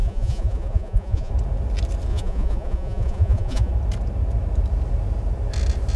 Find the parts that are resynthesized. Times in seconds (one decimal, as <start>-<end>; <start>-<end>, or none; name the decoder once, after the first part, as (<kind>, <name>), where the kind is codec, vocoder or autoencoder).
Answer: 0.0-1.3 (vocoder, Vocos); 2.1-3.7